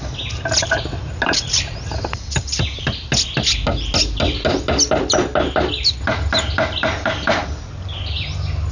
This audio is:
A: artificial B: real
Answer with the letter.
B